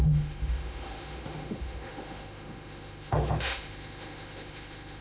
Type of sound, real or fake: fake